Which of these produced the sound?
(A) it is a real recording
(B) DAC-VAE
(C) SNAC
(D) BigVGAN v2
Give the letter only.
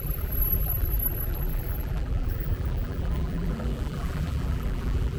D